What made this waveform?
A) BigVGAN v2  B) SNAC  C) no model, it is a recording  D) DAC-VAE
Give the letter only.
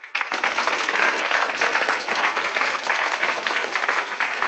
B